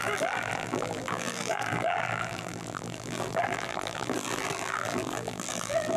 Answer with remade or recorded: remade